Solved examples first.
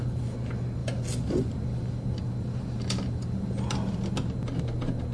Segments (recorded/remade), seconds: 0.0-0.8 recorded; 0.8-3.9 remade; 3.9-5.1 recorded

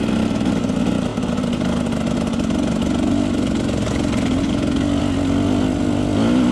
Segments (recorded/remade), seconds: 0.0-6.5 recorded